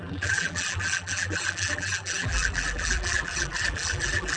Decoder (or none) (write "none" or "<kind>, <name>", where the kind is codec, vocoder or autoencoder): vocoder, BigVGAN v2